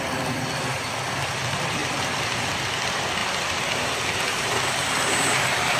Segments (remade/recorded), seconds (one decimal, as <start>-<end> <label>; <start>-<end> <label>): 0.0-5.8 recorded